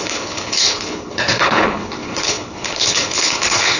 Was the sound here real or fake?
fake